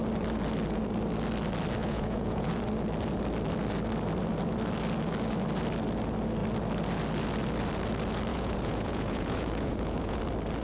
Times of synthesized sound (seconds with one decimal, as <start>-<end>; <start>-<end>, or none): 1.8-2.5; 8.3-10.2